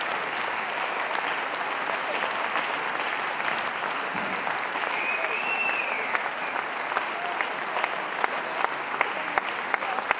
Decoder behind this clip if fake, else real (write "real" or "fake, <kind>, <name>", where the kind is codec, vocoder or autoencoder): real